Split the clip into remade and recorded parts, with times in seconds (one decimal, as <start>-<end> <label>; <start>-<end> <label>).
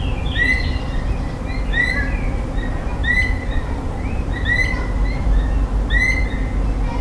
0.0-3.0 recorded; 3.0-4.3 remade; 4.3-7.0 recorded